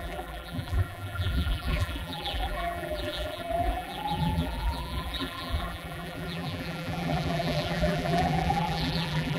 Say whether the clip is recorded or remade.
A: remade